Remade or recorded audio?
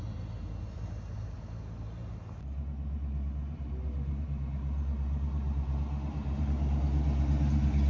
recorded